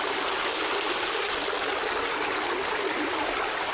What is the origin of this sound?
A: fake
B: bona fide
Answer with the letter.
B